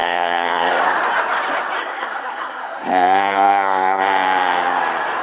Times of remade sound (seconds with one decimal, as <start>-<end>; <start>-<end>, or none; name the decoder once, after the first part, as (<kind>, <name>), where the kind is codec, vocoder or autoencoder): 0.0-0.8 (codec, SNAC); 1.8-4.0